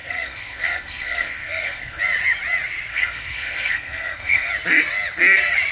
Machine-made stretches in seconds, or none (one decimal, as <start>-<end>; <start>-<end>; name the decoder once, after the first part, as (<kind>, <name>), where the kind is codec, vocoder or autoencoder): 0.0-2.0 (codec, SNAC); 2.9-4.5